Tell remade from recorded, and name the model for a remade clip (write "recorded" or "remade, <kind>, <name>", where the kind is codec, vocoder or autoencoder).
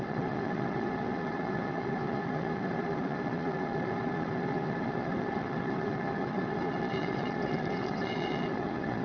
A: remade, vocoder, Vocos